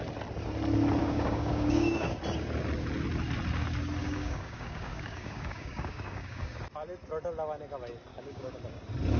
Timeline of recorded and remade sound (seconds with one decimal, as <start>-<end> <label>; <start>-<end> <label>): 0.0-1.0 recorded; 1.0-2.2 remade; 2.2-4.0 recorded; 4.0-6.6 remade; 6.6-8.1 recorded; 8.1-8.6 remade; 8.6-9.2 recorded